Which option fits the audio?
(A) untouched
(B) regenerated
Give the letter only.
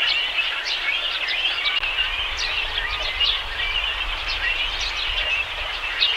A